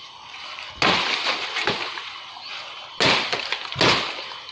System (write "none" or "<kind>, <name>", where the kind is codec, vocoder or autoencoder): none